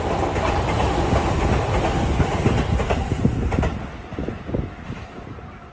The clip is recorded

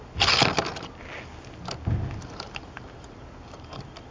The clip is recorded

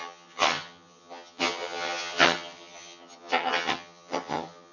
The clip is remade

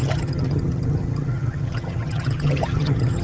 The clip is remade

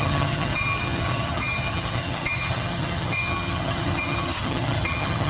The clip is remade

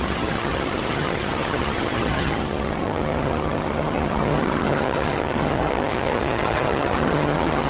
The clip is remade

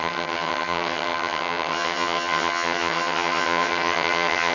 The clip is remade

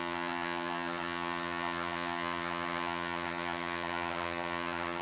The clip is remade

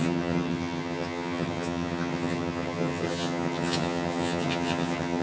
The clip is remade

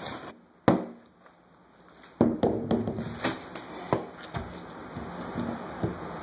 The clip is recorded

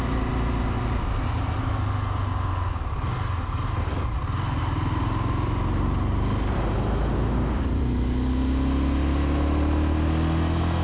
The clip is recorded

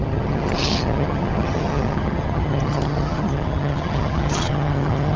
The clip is remade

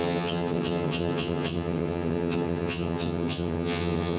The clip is remade